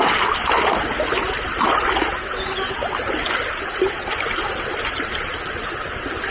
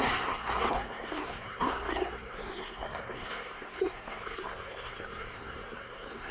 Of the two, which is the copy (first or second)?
second